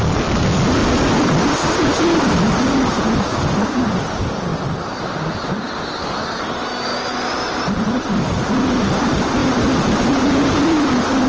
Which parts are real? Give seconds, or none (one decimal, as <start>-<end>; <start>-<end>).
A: 0.0-11.3